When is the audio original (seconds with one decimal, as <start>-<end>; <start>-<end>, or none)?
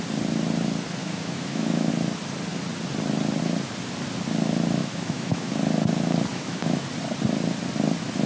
0.0-1.0; 1.9-4.8; 5.5-6.3; 6.8-8.3